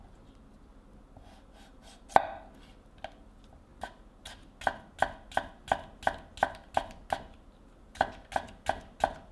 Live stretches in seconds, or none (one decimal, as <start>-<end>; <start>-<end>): 0.0-9.3